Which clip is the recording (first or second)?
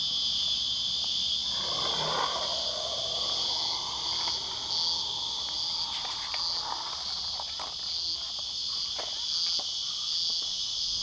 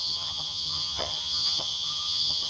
first